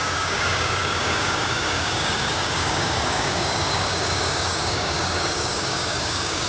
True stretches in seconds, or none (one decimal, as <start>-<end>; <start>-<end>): none